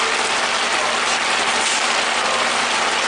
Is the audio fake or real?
real